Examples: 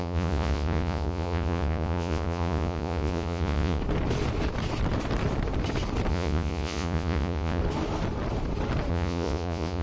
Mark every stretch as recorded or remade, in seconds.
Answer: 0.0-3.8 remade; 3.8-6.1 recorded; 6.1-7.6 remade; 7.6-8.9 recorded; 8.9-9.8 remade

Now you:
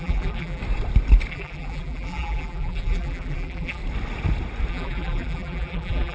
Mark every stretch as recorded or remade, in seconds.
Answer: 0.0-0.6 remade; 0.6-1.3 recorded; 1.3-3.8 remade; 3.8-4.7 recorded; 4.7-6.1 remade

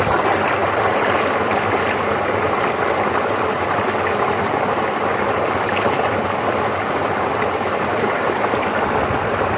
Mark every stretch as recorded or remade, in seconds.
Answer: 0.0-9.6 recorded

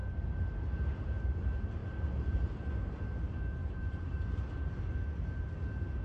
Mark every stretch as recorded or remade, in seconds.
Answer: 0.0-1.4 remade; 1.4-1.8 recorded; 1.8-3.0 remade; 3.0-3.6 recorded; 3.6-4.8 remade; 4.8-6.0 recorded